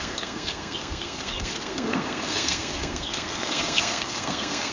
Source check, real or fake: fake